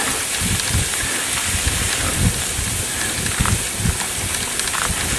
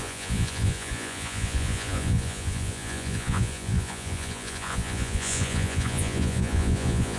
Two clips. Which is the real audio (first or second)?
first